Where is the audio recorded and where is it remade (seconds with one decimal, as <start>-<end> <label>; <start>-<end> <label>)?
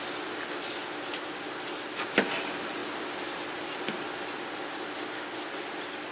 0.0-6.1 recorded